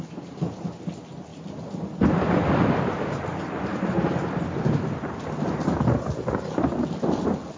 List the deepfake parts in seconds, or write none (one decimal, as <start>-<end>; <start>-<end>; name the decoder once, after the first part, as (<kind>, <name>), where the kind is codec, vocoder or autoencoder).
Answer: none